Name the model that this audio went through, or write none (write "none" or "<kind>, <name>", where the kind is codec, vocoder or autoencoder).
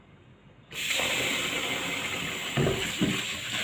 none